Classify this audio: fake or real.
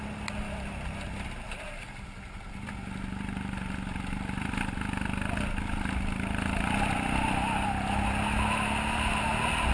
real